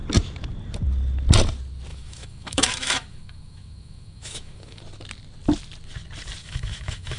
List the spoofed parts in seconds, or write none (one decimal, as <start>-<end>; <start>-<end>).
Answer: 1.9-4.8; 6.4-7.2